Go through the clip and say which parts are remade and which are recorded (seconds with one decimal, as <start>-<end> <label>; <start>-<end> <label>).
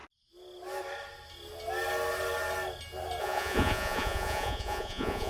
0.0-3.2 recorded; 3.2-5.3 remade